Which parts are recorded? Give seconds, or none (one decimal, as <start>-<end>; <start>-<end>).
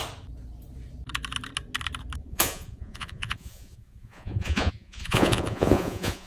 0.0-2.2